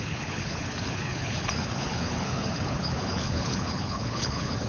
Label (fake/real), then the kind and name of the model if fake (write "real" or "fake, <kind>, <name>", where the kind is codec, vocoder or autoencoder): fake, codec, HILCodec